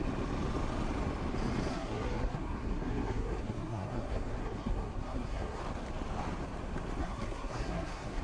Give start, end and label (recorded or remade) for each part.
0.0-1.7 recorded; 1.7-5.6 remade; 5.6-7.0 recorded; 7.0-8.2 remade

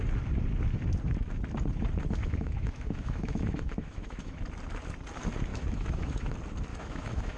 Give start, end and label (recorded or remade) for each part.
0.0-2.2 recorded; 2.2-4.4 remade; 4.4-5.5 recorded; 5.5-6.3 remade; 6.3-6.7 recorded; 6.7-7.4 remade